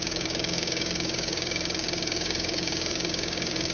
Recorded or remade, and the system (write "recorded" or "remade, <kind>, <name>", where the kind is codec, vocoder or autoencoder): remade, codec, DAC